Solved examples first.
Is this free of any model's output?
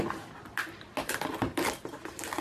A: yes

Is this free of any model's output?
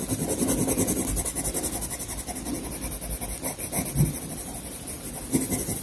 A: yes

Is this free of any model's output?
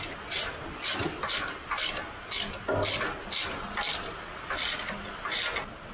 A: yes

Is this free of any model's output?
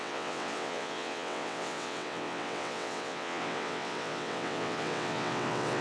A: no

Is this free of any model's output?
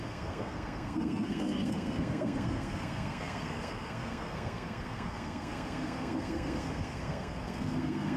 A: no